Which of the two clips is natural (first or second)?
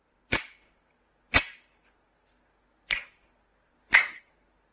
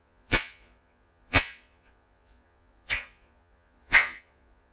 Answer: first